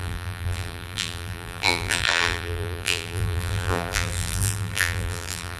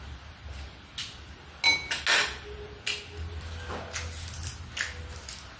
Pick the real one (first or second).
second